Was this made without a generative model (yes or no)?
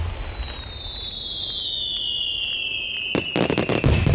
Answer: yes